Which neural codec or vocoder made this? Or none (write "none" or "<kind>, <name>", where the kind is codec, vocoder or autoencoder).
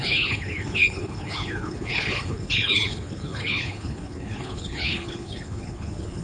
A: codec, HILCodec